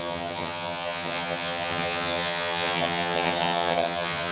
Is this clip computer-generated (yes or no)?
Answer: yes